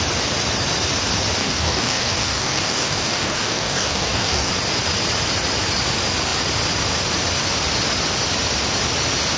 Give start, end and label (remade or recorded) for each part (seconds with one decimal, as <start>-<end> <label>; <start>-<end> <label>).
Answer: 0.0-1.4 recorded; 1.4-4.5 remade; 4.5-9.4 recorded